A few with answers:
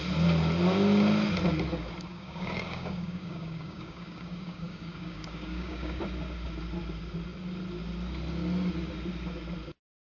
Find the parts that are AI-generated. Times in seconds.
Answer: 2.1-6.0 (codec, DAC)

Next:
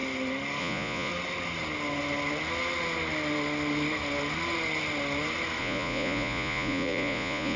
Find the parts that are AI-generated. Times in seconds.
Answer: 0.6-1.1 (vocoder, Vocos); 5.6-7.6

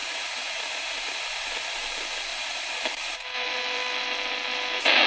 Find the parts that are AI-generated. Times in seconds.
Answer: 0.0-1.7 (vocoder, BigVGAN v2); 2.3-4.0

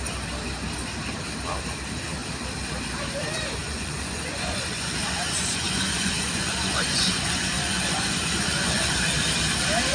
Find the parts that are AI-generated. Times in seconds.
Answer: 3.6-8.9 (vocoder, Vocos)

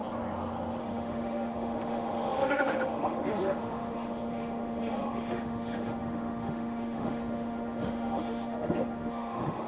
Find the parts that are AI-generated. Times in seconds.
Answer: 0.8-9.7 (autoencoder, DAC-VAE)

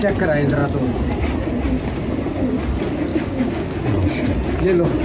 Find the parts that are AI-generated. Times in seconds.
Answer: 3.1-3.8 (codec, DAC)